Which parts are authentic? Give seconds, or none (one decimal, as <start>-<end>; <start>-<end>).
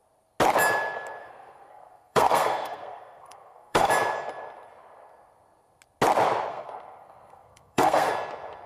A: 0.0-1.2; 3.9-6.5; 8.1-8.7